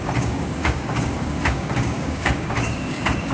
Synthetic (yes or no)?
yes